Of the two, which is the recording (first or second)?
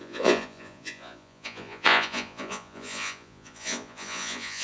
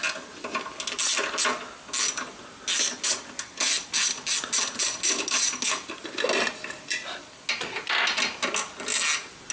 second